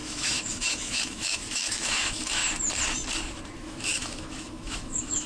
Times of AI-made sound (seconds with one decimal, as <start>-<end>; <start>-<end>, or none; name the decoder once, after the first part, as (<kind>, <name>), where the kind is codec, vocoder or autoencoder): 0.0-2.4 (autoencoder, DAC-VAE); 3.6-5.3